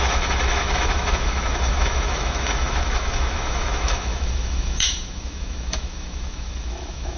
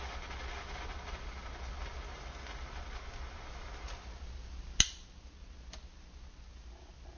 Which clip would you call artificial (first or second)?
first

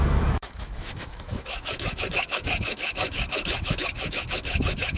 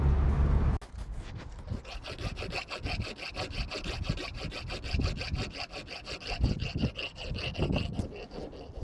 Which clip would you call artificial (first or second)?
first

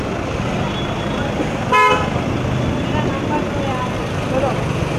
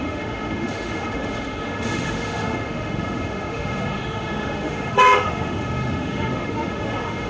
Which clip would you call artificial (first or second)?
second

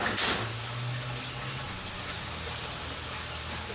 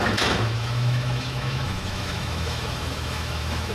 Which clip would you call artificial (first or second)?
second